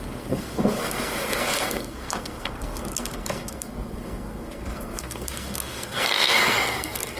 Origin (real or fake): fake